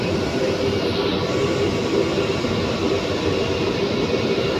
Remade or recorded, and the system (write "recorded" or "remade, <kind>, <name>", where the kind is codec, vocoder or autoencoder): recorded